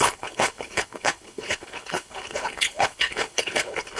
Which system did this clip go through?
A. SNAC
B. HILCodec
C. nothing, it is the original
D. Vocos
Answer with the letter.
B